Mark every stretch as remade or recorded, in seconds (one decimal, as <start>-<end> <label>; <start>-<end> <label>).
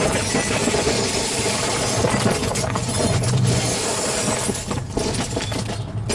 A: 0.0-0.6 recorded; 0.6-1.1 remade; 1.1-2.4 recorded; 2.4-3.6 remade; 3.6-6.1 recorded